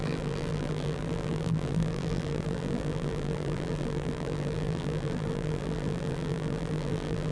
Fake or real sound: fake